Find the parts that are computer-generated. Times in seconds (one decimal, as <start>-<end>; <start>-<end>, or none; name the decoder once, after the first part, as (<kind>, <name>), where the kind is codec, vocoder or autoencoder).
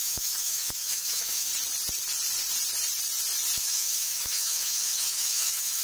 0.0-1.5 (autoencoder, DAC-VAE); 3.6-5.8